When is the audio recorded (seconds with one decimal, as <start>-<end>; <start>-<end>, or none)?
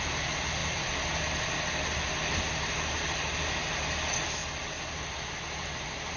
0.0-0.6; 1.3-6.2